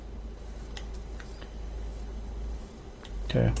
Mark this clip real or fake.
real